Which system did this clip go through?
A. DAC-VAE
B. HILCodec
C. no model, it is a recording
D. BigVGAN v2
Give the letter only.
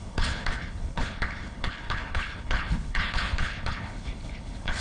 B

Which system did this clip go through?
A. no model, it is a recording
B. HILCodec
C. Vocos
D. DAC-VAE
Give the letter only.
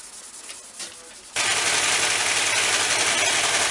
A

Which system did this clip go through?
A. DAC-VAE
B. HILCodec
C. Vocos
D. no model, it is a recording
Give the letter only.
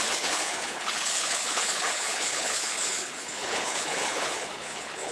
B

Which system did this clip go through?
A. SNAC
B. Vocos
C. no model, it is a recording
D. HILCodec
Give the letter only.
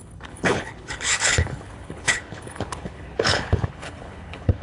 D